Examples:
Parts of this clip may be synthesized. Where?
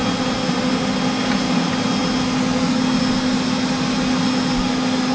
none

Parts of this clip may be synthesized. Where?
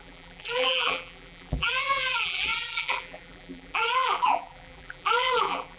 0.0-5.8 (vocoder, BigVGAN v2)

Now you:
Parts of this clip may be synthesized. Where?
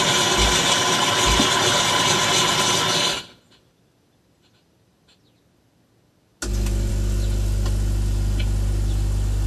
none